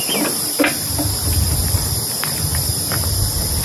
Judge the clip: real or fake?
real